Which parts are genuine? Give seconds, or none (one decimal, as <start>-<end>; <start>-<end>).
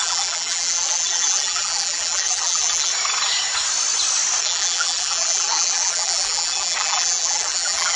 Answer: 2.9-4.4